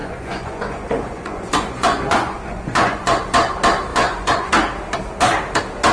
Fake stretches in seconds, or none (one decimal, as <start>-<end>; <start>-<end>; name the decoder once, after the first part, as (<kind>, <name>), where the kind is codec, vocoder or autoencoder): 0.0-3.2 (vocoder, Vocos); 3.9-4.5